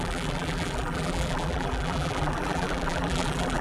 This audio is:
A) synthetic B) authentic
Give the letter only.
A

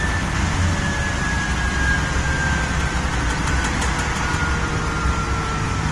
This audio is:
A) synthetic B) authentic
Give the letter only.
B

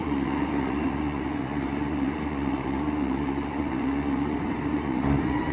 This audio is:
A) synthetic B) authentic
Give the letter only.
A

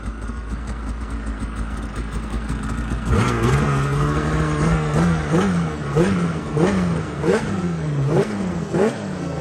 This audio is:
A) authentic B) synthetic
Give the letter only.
B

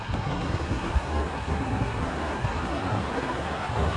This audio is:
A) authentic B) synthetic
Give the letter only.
B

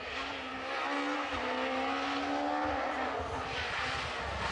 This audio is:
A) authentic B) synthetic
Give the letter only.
A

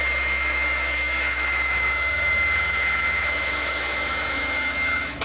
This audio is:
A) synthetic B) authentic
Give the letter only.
A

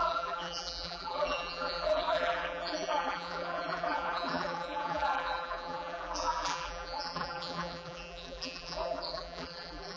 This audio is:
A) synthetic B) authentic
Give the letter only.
A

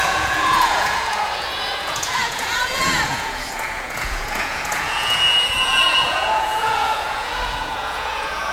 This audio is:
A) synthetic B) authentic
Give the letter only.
A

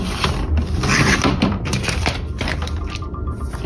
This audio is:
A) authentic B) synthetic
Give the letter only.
B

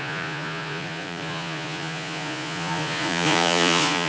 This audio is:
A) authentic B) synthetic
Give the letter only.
B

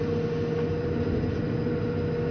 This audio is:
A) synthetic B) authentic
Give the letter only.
B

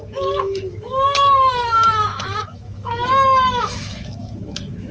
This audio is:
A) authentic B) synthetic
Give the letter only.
B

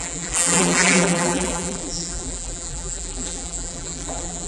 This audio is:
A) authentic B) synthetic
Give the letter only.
B